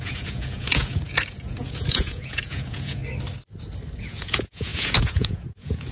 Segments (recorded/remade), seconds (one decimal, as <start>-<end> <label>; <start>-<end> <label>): 0.0-3.0 remade; 3.0-4.0 recorded; 4.0-5.9 remade